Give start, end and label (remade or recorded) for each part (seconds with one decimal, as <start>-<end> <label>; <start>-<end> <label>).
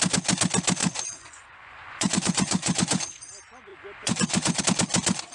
0.0-0.8 recorded; 0.8-3.3 remade; 3.3-3.7 recorded; 3.7-4.6 remade; 4.6-5.3 recorded